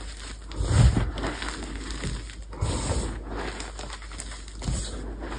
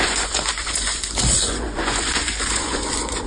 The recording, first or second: first